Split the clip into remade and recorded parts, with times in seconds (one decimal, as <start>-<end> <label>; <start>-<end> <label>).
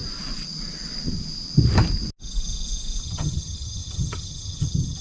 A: 0.0-3.0 recorded; 3.0-5.0 remade